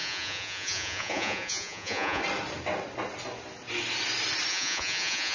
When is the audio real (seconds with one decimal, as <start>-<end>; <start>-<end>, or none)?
2.2-4.5